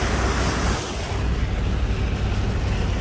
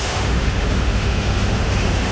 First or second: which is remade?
second